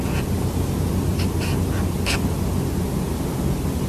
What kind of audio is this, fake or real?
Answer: real